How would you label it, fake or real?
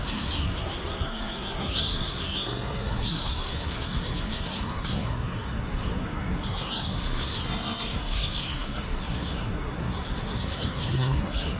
fake